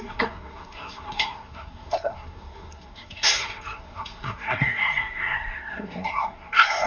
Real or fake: fake